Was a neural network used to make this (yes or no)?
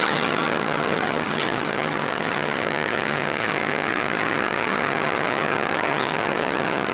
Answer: yes